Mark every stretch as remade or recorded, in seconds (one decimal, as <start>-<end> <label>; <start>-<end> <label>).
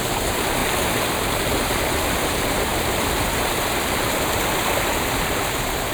0.0-0.6 remade; 0.6-1.3 recorded; 1.3-2.7 remade; 2.7-4.6 recorded; 4.6-5.9 remade